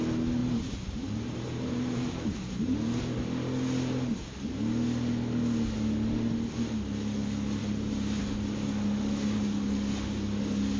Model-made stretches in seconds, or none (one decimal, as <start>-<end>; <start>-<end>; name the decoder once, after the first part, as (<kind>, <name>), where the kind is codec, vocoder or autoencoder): 0.4-3.0 (vocoder, BigVGAN v2); 7.6-8.2